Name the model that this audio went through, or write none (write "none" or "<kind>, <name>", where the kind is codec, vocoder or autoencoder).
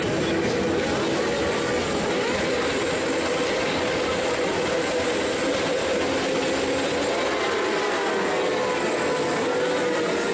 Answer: none